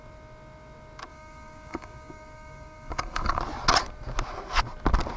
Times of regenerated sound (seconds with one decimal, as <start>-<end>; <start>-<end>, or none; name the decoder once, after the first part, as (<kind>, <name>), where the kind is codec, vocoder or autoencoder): 1.1-3.4 (codec, DAC)

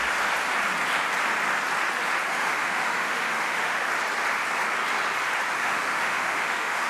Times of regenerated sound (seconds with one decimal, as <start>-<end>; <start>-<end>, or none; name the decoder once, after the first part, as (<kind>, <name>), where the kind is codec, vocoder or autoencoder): 2.3-3.9 (autoencoder, DAC-VAE); 5.6-6.9

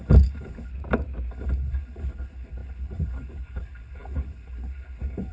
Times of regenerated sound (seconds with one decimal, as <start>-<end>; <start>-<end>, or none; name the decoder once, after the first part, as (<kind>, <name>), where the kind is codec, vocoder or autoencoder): 0.0-0.7 (codec, HILCodec); 1.3-5.3

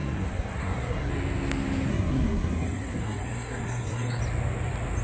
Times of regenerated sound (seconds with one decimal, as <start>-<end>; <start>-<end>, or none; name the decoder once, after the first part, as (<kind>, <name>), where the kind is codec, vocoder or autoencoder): 0.0-1.1 (codec, SNAC); 1.9-4.2

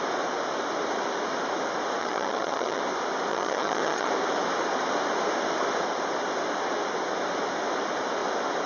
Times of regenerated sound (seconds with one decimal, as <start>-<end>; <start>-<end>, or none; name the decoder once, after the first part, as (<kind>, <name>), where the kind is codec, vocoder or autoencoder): 2.0-2.8 (vocoder, HiFi-GAN); 3.3-4.1

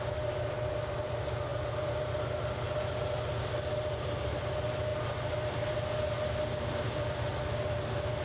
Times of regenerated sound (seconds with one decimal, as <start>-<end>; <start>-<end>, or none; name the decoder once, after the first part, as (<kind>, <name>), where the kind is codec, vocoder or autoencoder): none